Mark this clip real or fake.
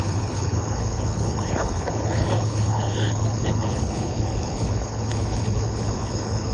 fake